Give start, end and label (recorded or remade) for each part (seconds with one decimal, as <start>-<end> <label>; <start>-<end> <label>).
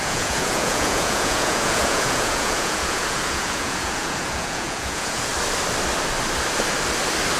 0.0-5.3 remade; 5.3-7.4 recorded